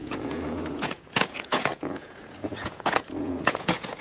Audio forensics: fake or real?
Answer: fake